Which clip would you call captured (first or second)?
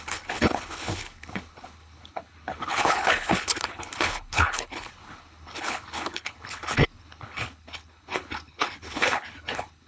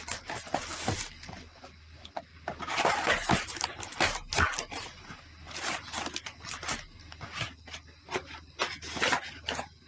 second